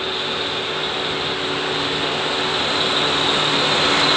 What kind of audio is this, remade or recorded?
recorded